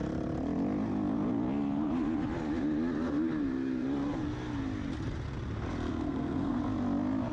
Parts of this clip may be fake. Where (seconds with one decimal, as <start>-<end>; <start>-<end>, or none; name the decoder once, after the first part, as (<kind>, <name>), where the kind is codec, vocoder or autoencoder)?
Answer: 5.9-6.6 (codec, SNAC)